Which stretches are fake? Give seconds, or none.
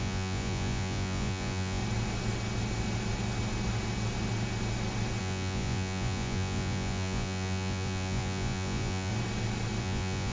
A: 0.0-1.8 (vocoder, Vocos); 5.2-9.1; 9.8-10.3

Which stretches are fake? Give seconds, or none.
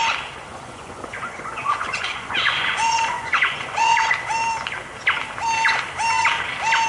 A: 0.5-4.1 (vocoder, Vocos)